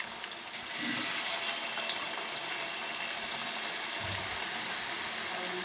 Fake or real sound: real